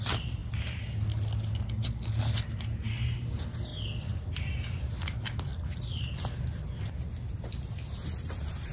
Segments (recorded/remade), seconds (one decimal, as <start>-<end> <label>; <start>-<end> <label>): 0.0-8.0 recorded; 8.0-8.7 remade